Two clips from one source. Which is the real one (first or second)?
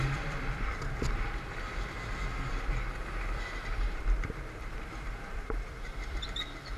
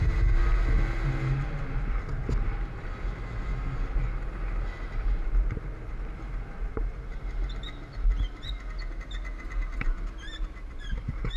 second